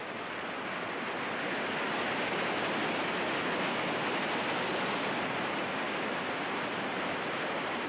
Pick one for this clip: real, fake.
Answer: real